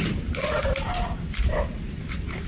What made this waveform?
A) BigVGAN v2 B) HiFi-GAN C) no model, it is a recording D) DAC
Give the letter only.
A